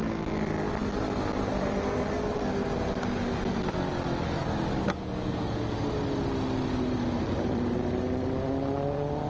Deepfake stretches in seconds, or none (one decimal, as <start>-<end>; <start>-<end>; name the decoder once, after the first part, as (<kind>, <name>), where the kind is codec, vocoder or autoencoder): 4.4-5.8 (codec, DAC)